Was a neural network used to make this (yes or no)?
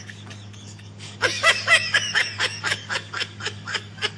yes